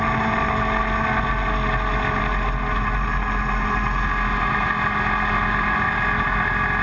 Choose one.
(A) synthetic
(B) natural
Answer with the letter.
B